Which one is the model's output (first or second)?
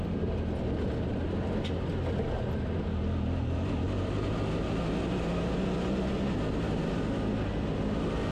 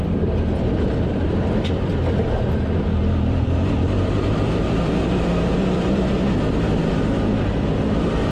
second